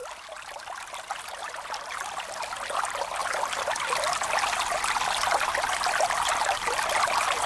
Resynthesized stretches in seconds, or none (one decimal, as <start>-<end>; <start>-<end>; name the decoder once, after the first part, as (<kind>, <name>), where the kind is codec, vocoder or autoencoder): none